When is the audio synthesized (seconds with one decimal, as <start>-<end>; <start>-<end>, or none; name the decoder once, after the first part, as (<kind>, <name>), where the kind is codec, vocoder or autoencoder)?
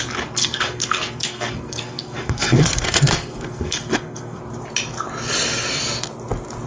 0.4-4.4 (codec, SNAC)